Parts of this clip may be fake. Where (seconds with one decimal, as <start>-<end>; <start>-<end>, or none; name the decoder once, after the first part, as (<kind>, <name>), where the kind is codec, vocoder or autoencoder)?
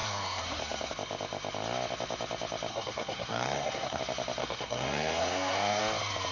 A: 0.0-0.6 (codec, SNAC); 2.7-4.0; 4.4-5.8